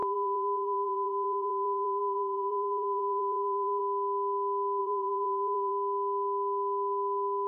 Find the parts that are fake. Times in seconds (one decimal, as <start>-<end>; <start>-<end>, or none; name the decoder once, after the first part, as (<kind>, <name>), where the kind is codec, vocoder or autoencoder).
0.0-3.8 (vocoder, BigVGAN v2); 4.8-5.7